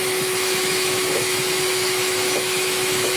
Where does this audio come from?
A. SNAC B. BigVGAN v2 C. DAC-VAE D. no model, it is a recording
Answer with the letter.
C